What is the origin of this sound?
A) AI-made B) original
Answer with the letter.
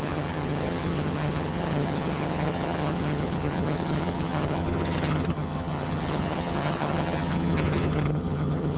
A